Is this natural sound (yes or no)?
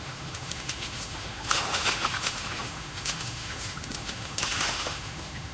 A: no